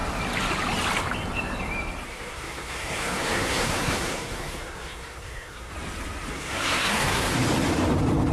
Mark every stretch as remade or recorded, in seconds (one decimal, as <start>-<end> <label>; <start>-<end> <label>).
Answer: 0.0-2.1 recorded; 2.1-5.7 remade; 5.7-6.3 recorded; 6.3-7.3 remade; 7.3-8.3 recorded

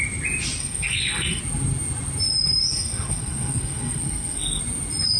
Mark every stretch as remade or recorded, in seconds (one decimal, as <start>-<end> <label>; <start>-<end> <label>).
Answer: 0.0-0.6 recorded; 0.6-1.4 remade; 1.4-2.7 recorded; 2.7-4.6 remade; 4.6-5.2 recorded